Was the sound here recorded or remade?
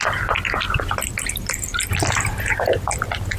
recorded